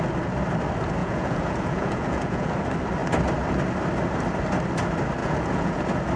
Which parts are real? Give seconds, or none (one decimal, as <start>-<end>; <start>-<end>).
0.0-1.0; 2.5-5.2; 5.8-6.2